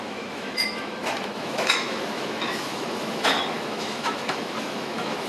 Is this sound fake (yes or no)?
yes